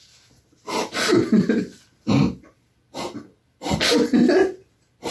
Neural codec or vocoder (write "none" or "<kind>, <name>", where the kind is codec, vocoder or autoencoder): vocoder, BigVGAN v2